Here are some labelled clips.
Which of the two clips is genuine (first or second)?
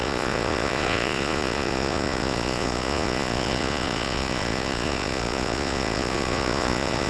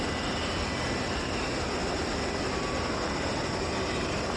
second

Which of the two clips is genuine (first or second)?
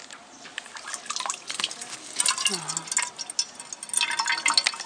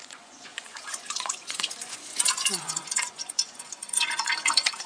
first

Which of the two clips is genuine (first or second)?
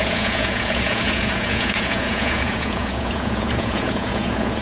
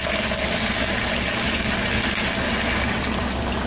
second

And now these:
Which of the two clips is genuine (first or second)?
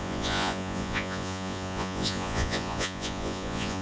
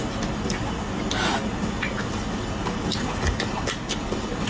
second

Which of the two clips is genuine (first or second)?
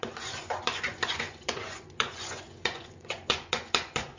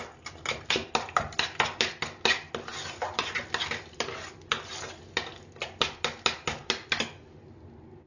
second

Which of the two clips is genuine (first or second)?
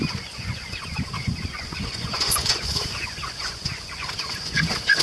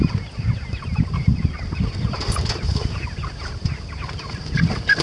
second